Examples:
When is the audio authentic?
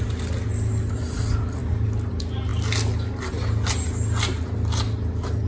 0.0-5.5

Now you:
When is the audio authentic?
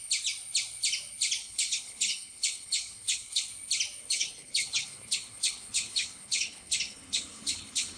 0.0-1.4; 3.4-4.0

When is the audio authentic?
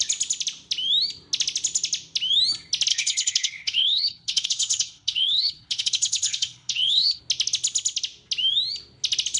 0.0-2.9; 7.2-9.4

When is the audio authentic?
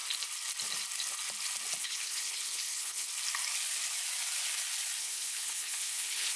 0.0-1.8; 3.1-5.0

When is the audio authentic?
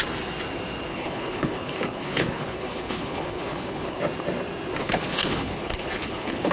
0.0-0.9; 4.0-4.8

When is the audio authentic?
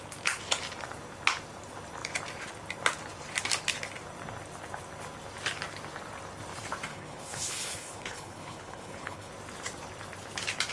0.0-6.9; 9.3-10.7